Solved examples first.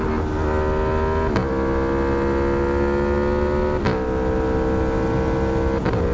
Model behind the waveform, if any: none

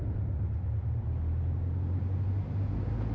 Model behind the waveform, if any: none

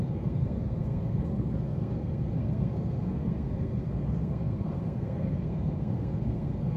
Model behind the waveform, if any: codec, SNAC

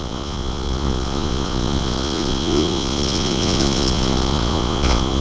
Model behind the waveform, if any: vocoder, Vocos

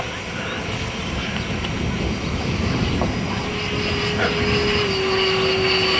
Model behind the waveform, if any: none